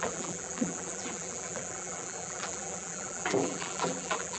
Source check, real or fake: fake